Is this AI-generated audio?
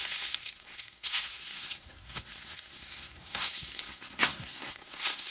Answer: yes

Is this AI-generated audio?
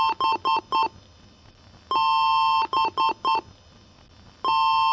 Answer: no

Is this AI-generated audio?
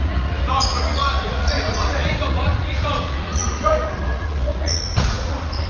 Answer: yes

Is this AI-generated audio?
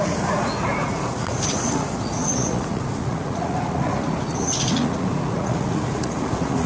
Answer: yes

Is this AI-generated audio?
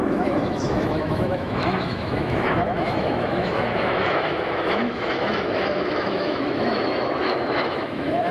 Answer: yes